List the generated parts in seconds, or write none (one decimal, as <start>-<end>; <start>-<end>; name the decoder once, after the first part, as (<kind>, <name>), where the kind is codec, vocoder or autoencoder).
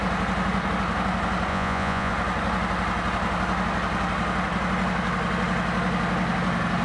1.5-2.1 (vocoder, Vocos)